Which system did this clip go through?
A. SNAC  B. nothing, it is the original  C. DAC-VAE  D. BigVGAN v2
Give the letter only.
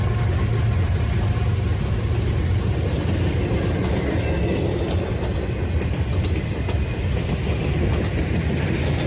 B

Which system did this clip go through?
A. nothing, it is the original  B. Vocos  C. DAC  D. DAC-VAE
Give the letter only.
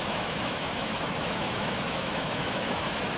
D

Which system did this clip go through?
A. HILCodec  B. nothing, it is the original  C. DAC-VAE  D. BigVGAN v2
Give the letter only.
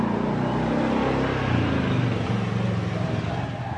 B